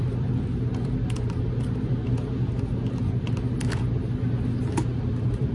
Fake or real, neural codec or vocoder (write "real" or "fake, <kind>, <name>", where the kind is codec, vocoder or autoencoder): real